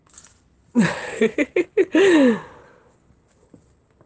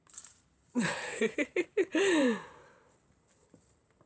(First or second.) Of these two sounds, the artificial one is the second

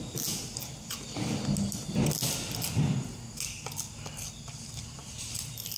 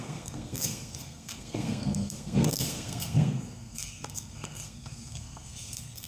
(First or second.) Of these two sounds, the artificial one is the second